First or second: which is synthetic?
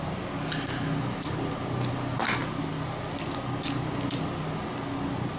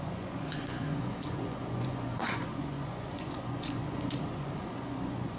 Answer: second